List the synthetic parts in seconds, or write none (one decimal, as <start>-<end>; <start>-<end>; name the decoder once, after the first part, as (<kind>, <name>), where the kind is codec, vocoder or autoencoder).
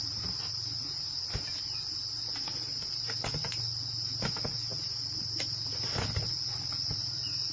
none